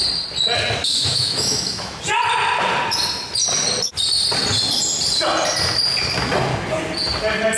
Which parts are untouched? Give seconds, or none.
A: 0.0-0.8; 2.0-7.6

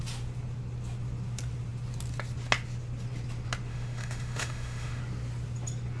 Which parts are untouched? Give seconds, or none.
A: 0.0-3.7; 5.0-6.0

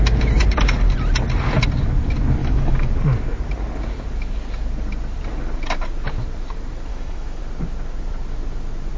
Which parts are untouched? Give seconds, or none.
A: 0.0-2.4; 2.9-6.9; 7.4-9.0